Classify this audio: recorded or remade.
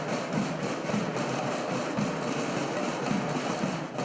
recorded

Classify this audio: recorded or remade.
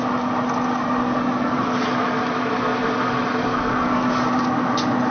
recorded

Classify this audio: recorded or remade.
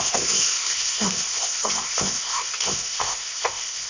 remade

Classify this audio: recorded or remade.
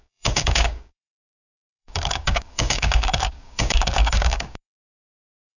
remade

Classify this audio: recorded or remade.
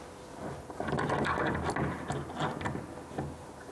recorded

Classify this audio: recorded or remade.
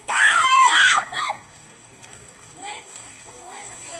remade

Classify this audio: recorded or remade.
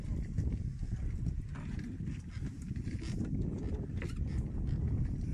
recorded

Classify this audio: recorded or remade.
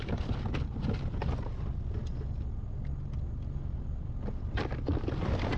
recorded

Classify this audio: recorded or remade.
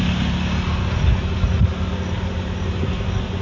recorded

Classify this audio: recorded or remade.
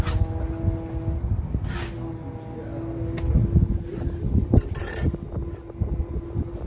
recorded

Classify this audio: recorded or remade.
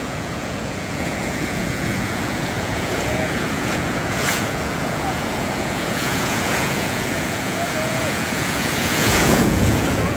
remade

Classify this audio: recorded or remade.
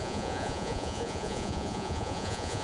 remade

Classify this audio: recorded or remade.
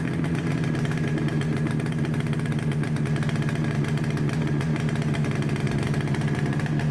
recorded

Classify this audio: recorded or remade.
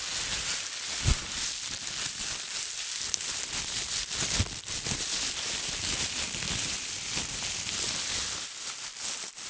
recorded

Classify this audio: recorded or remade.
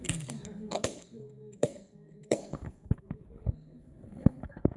remade